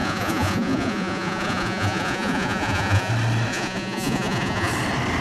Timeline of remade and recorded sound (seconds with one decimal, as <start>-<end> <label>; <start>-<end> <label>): 0.0-3.1 remade; 3.1-3.5 recorded; 3.5-4.7 remade; 4.7-5.2 recorded